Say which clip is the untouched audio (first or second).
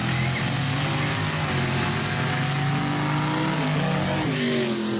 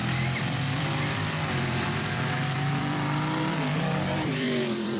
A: first